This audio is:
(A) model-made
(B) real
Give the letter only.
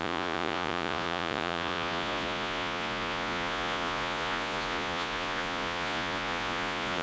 A